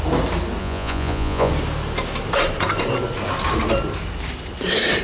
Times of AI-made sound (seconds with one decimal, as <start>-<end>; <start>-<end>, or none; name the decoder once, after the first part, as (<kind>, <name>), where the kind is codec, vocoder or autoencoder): 0.6-1.5 (vocoder, Vocos)